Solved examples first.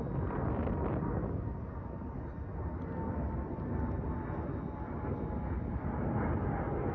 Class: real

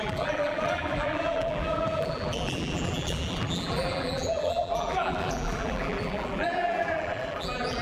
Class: fake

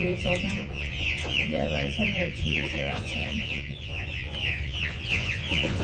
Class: fake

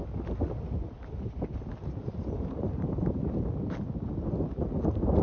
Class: real